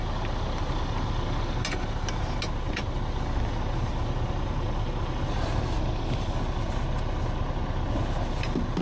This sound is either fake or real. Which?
real